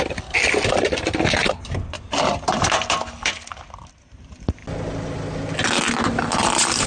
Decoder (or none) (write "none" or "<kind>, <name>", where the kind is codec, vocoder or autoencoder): none